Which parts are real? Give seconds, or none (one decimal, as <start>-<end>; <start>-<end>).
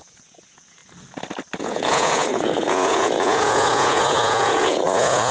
0.8-1.6